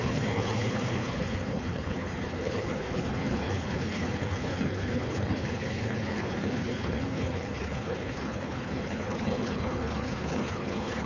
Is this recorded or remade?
remade